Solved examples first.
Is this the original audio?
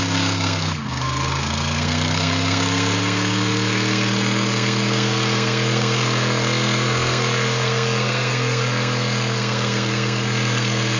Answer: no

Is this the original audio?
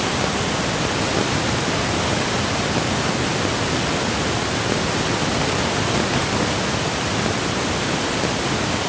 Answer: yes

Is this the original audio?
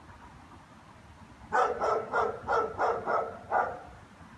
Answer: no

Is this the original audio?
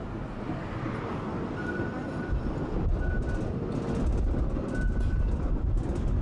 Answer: yes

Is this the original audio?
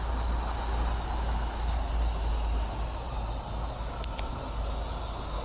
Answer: yes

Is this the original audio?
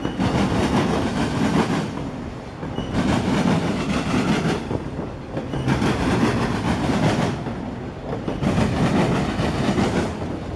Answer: yes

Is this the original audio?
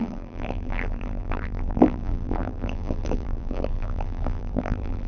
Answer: no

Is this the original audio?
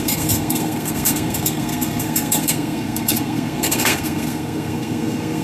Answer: no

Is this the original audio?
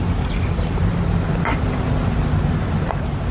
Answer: no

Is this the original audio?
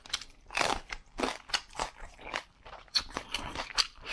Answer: no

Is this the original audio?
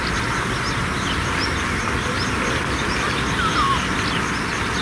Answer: yes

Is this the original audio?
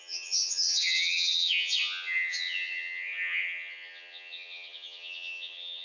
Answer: no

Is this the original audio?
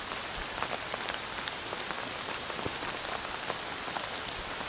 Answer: yes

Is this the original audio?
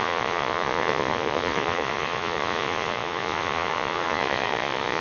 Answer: no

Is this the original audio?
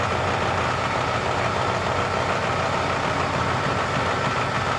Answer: yes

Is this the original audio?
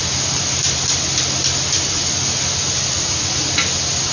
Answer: yes